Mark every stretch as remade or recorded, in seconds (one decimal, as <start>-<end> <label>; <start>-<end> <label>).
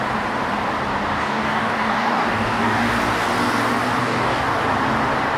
0.0-1.2 recorded; 1.2-2.9 remade; 2.9-4.0 recorded; 4.0-4.6 remade; 4.6-5.4 recorded